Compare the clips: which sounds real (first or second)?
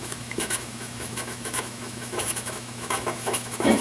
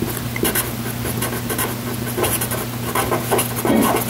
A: second